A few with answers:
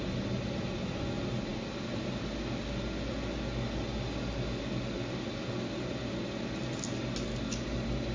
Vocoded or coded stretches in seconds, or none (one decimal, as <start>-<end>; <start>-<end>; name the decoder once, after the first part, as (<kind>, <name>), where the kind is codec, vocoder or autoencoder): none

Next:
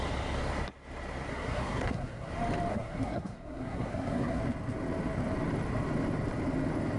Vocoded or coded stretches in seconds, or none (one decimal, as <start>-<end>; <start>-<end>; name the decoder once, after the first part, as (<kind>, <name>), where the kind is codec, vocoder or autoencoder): 1.3-2.3 (codec, SNAC); 2.7-4.4

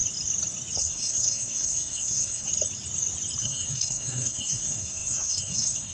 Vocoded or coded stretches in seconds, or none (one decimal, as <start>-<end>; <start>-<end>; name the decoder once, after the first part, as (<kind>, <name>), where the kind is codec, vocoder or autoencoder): 0.8-2.5 (codec, SNAC); 3.4-5.9

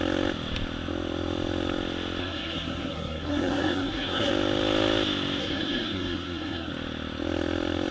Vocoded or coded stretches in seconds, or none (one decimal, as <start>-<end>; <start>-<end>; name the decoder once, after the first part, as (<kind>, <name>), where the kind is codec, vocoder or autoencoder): 2.2-4.3 (codec, SNAC); 5.4-6.7

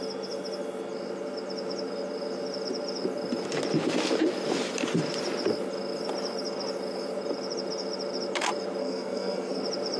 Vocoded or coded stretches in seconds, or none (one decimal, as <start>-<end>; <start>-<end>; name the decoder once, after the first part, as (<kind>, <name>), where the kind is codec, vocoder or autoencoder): 8.8-9.6 (codec, SNAC)

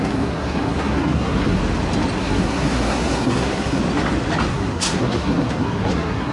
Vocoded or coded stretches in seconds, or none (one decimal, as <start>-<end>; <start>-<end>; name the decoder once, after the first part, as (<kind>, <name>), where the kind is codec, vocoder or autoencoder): 0.0-1.6 (codec, SNAC); 2.2-3.8; 4.5-6.3

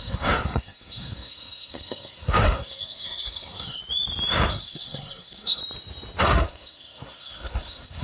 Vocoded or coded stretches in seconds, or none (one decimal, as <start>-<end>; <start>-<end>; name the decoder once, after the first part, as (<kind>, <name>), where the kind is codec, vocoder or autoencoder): 0.0-3.8 (codec, SNAC); 4.5-5.6; 6.2-8.0